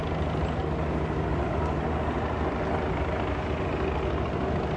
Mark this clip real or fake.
real